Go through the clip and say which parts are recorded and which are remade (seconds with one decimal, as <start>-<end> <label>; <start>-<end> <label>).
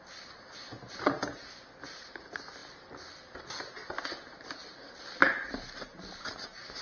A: 0.0-6.8 recorded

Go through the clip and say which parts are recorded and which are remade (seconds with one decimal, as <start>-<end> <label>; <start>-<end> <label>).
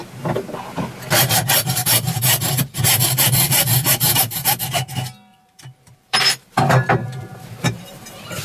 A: 0.0-1.8 recorded; 1.8-4.6 remade; 4.6-5.3 recorded; 5.3-6.4 remade; 6.4-7.0 recorded; 7.0-8.4 remade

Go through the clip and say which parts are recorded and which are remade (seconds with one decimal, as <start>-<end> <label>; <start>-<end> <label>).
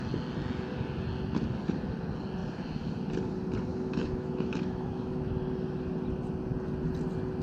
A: 0.0-3.7 recorded; 3.7-5.3 remade; 5.3-7.4 recorded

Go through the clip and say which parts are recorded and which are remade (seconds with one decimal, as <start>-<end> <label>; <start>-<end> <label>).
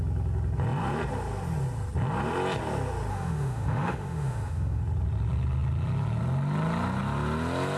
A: 0.0-3.1 recorded; 3.1-4.8 remade; 4.8-7.8 recorded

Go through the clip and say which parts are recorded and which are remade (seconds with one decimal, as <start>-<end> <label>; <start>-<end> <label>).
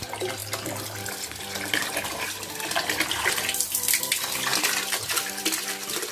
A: 0.0-4.5 remade; 4.5-5.4 recorded; 5.4-6.1 remade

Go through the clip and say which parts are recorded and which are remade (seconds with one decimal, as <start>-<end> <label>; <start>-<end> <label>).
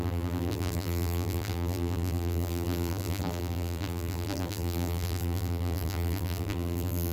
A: 0.0-7.1 remade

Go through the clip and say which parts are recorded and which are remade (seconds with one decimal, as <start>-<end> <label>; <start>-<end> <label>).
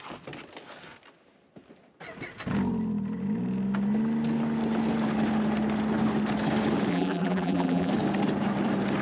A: 0.0-6.9 recorded; 6.9-7.9 remade; 7.9-9.0 recorded